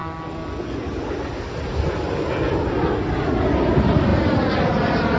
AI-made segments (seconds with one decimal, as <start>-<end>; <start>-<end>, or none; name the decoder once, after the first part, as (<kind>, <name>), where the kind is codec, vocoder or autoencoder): none